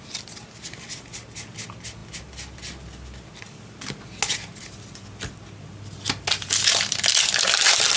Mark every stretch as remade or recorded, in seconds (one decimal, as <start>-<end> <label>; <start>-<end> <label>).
0.0-8.0 recorded